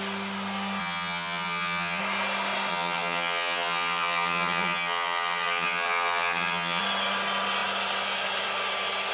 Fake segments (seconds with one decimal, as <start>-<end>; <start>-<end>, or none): 0.8-2.0; 2.7-6.8